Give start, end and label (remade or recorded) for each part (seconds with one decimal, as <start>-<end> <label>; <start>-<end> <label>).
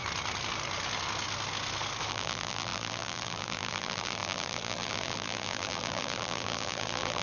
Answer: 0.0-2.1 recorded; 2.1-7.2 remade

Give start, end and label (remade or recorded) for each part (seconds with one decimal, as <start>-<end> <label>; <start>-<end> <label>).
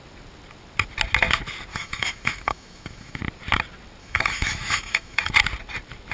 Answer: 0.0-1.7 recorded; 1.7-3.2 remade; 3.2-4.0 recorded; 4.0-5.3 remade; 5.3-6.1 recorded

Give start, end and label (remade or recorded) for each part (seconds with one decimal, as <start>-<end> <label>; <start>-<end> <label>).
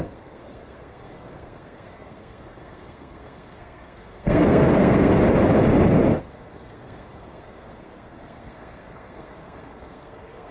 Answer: 0.0-5.1 remade; 5.1-6.2 recorded; 6.2-10.5 remade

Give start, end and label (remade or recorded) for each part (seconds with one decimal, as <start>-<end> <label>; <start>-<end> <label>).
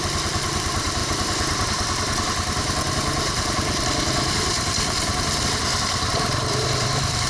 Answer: 0.0-1.0 remade; 1.0-5.4 recorded; 5.4-7.3 remade